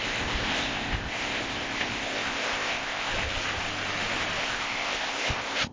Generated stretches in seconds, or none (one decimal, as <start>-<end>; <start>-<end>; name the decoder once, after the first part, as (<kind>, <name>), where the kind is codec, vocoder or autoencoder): 0.0-3.1 (codec, ZipCodec); 4.4-5.7